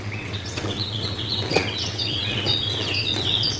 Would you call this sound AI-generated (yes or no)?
yes